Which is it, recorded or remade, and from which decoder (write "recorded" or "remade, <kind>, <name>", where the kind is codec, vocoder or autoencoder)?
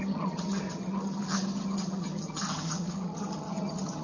remade, vocoder, HiFi-GAN